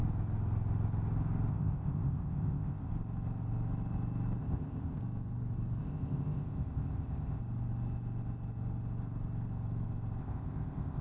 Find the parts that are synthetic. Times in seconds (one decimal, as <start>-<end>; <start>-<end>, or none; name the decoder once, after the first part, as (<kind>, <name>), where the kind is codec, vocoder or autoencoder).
1.5-2.9 (codec, ZipCodec); 4.4-5.0; 5.8-7.4; 10.2-11.0